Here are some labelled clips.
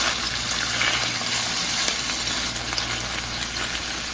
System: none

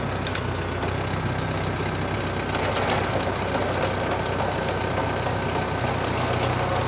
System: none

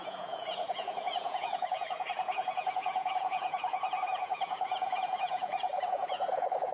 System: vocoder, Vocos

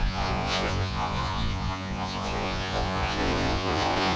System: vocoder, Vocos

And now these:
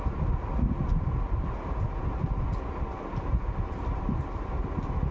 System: none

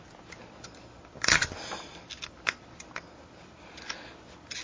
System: none